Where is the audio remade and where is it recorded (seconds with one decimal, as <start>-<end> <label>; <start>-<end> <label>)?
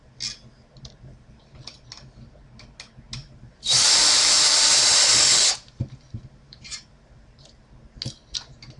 0.0-3.2 recorded; 3.2-7.7 remade; 7.7-8.8 recorded